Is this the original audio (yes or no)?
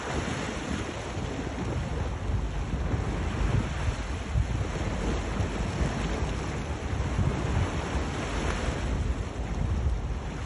yes